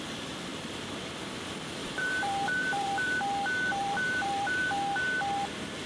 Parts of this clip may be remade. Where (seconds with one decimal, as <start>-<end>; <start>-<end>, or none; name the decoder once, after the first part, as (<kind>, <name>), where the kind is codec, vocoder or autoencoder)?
0.5-1.0 (vocoder, BigVGAN v2); 1.8-3.2; 3.7-4.6